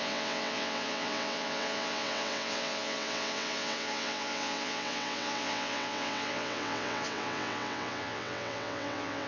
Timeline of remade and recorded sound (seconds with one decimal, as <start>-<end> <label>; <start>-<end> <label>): 0.0-9.3 remade